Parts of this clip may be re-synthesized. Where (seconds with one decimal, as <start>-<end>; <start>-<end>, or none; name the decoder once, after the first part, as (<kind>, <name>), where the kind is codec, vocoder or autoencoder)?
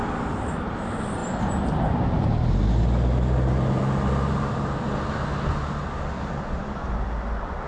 none